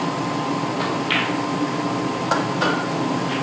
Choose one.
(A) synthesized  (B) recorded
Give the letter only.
B